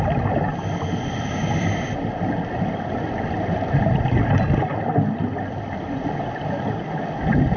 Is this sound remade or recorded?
recorded